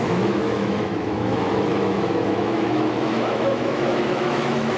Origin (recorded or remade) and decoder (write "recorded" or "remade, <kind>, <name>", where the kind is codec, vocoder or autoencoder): remade, autoencoder, DAC-VAE